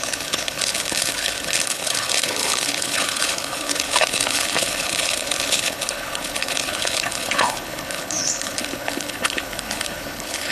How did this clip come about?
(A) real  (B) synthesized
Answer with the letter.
B